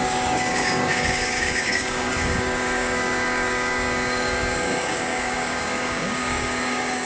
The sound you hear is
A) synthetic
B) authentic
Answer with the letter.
A